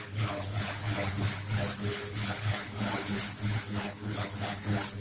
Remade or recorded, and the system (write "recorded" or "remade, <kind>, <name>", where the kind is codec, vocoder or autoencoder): remade, codec, HILCodec